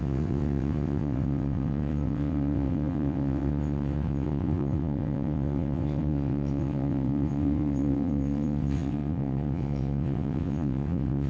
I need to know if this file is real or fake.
fake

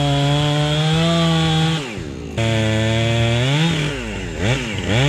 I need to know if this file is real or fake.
real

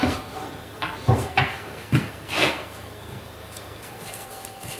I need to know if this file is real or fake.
fake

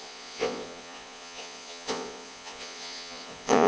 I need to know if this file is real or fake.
fake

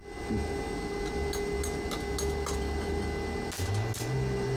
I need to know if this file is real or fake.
real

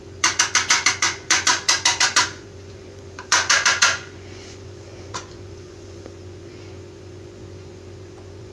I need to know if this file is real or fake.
fake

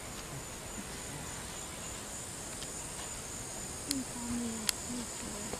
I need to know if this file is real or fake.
real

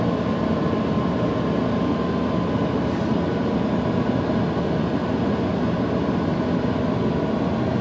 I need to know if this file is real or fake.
real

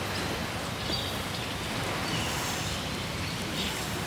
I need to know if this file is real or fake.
real